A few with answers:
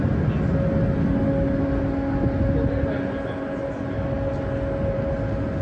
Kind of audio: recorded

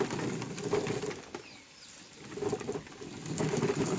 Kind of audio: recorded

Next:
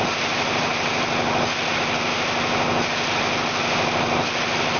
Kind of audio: recorded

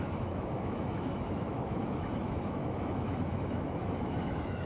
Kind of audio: remade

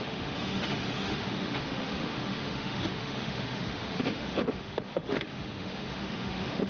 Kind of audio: remade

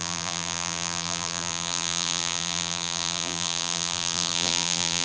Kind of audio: remade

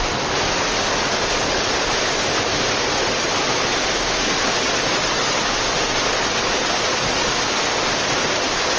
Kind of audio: recorded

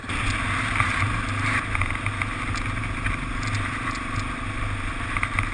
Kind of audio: recorded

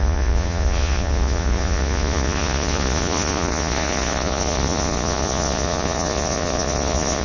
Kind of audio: remade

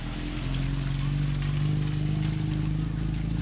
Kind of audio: recorded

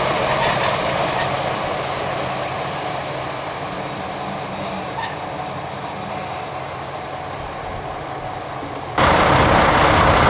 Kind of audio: recorded